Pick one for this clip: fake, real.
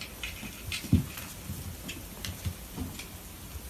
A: real